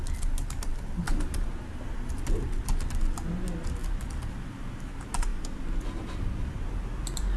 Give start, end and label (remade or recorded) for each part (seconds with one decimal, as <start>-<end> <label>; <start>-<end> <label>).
0.0-7.4 recorded